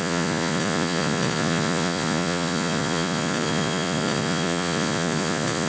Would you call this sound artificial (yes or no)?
yes